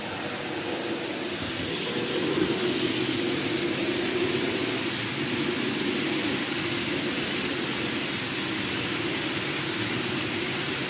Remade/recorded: recorded